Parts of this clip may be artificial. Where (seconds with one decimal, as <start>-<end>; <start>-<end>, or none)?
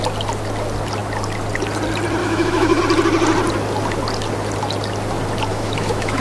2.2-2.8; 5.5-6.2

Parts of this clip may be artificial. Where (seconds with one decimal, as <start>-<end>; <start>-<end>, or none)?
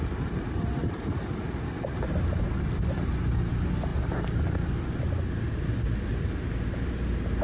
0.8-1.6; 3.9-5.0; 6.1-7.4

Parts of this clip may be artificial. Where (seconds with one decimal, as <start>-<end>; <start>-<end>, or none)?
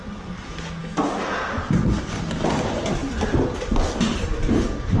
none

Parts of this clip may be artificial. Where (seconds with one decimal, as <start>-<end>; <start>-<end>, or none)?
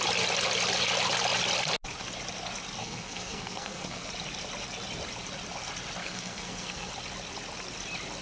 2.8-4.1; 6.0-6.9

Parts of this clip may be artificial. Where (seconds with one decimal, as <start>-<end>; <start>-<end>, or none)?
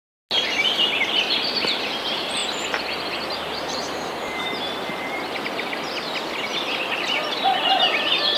0.6-8.4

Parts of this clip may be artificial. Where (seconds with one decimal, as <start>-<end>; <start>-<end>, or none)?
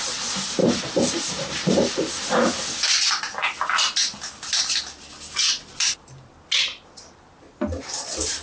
0.6-2.1; 5.7-6.3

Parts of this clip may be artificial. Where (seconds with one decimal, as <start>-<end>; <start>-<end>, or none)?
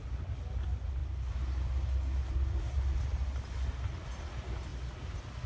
none